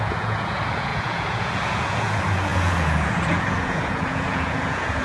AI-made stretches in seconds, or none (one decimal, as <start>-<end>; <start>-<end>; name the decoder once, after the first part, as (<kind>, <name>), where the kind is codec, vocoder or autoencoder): 0.0-5.0 (vocoder, Vocos)

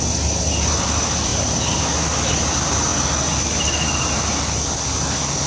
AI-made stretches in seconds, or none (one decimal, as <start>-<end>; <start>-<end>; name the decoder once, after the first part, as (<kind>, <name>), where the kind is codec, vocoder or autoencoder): none

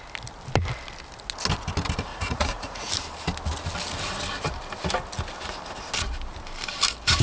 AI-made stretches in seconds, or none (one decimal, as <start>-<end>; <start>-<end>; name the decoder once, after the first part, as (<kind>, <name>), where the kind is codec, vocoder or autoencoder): 2.1-2.9 (vocoder, Vocos)

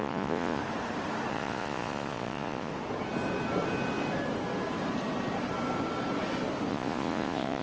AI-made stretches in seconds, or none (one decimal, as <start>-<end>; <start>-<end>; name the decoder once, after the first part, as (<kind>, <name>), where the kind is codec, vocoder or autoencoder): 0.0-0.6 (vocoder, Vocos); 1.3-2.7; 6.7-7.6

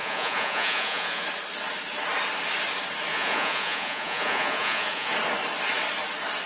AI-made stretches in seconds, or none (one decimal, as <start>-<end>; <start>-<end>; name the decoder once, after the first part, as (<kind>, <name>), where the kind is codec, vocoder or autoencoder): 0.0-1.2 (vocoder, Vocos); 3.1-5.1